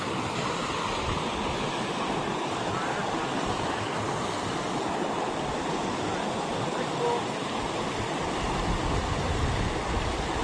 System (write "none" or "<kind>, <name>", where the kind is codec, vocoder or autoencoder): none